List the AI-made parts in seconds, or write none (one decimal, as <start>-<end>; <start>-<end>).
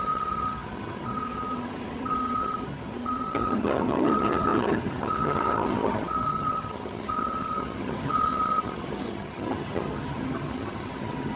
0.0-11.3